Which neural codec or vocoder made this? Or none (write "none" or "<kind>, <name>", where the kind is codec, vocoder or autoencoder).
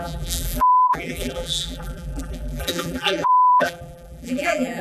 vocoder, BigVGAN v2